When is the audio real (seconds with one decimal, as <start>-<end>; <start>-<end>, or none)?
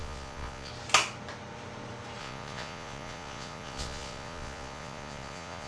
0.7-2.2